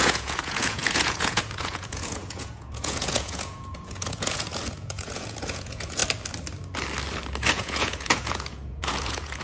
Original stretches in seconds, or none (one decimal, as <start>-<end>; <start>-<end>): 6.0-7.5